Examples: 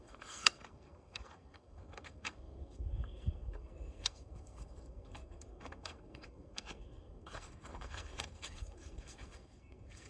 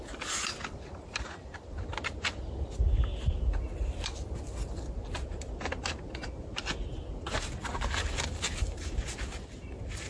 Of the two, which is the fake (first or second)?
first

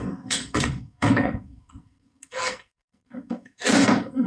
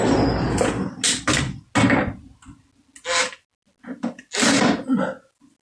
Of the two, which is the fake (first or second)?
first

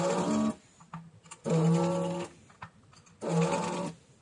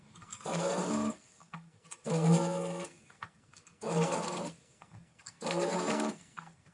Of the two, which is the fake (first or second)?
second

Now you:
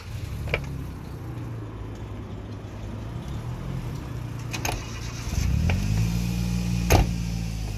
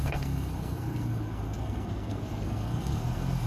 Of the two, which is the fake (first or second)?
second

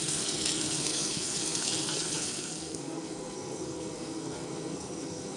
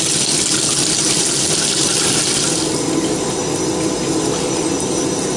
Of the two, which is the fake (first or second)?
first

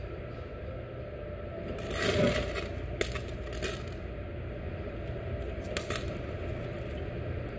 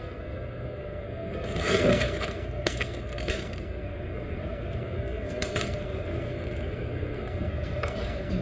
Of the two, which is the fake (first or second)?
second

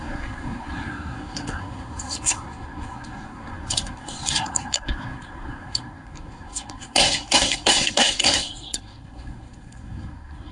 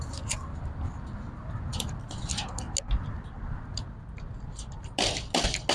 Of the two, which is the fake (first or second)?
first